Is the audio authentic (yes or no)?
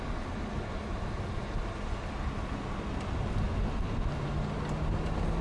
yes